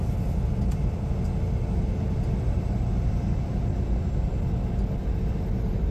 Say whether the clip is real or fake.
real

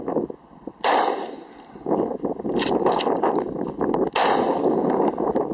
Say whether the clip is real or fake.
real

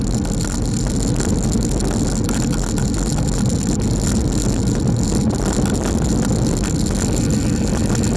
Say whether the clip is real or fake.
real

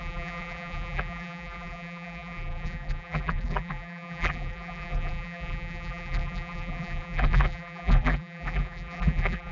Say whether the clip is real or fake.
fake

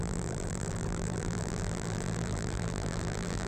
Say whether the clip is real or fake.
fake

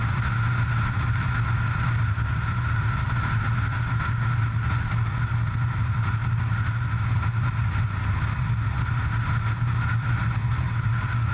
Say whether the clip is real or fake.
real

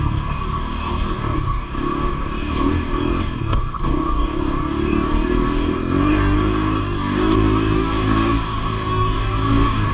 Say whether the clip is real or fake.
fake